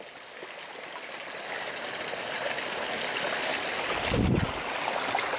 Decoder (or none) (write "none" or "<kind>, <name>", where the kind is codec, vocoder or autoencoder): none